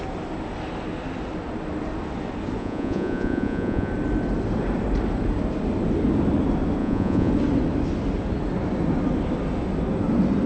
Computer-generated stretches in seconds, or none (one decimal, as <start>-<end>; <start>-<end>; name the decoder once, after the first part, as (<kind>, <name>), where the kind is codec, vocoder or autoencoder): 2.6-3.9 (vocoder, Vocos); 6.8-7.3